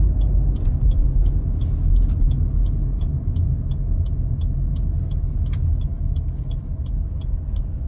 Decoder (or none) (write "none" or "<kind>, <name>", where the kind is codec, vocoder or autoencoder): none